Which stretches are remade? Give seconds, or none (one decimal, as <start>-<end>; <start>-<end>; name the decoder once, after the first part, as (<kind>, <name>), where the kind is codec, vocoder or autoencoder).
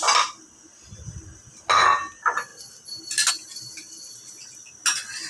none